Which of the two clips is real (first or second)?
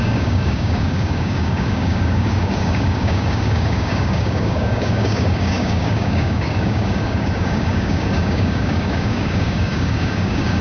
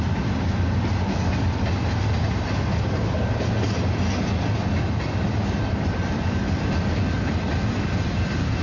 second